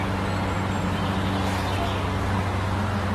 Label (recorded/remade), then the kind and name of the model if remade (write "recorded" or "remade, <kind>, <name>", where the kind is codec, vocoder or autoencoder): recorded